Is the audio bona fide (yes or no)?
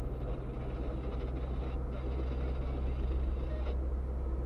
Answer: yes